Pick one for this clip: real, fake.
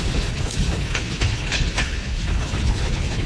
fake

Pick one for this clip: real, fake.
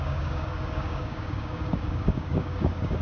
fake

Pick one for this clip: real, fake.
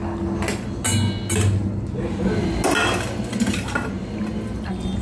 real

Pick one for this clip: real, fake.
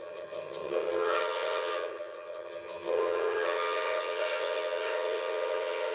fake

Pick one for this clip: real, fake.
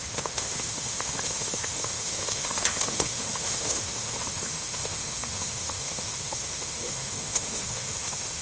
fake